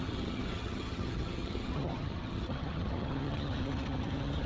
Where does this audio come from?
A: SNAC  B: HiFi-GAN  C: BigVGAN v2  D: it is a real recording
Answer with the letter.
B